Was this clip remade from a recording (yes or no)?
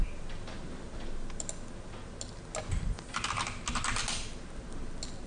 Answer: no